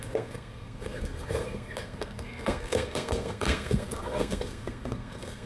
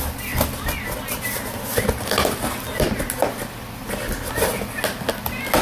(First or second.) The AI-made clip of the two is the first